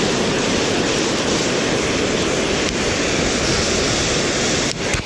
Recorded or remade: recorded